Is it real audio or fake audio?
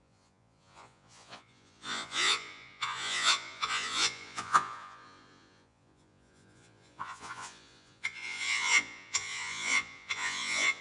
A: fake